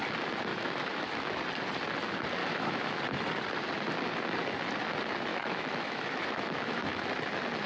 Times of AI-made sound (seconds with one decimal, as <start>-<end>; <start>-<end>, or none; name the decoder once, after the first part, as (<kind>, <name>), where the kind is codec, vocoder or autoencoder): 0.5-1.4 (autoencoder, DAC-VAE); 2.4-3.0; 5.3-7.1